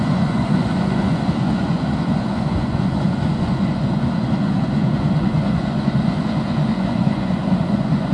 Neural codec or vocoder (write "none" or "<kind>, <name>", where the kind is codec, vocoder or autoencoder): vocoder, Vocos